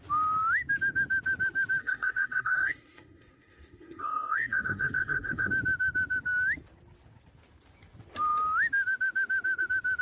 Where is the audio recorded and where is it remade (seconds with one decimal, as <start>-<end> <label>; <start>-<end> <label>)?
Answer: 0.0-1.8 recorded; 1.8-5.5 remade; 5.5-10.0 recorded